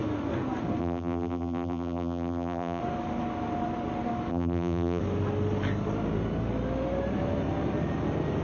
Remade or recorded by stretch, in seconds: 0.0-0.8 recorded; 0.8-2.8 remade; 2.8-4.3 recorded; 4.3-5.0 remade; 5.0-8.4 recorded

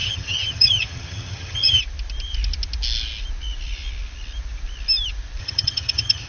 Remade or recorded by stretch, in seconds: 0.0-1.8 remade; 1.8-5.4 recorded; 5.4-6.3 remade

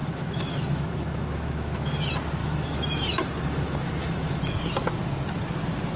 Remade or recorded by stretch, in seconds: 0.0-2.0 remade; 2.0-2.4 recorded; 2.4-4.4 remade; 4.4-6.0 recorded

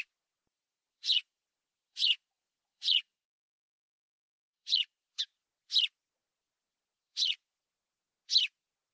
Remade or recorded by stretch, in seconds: 0.0-0.5 recorded; 0.5-5.2 remade; 5.2-6.9 recorded; 6.9-7.6 remade; 7.6-8.9 recorded